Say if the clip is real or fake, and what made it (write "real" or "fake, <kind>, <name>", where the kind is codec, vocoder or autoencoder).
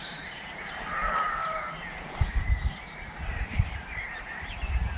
fake, vocoder, BigVGAN v2